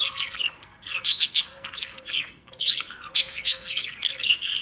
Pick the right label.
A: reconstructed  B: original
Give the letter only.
A